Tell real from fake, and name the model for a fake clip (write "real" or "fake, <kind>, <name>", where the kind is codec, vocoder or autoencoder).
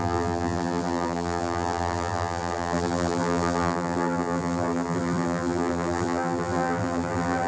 fake, vocoder, BigVGAN v2